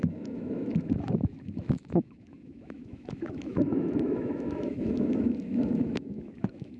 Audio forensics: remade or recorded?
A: remade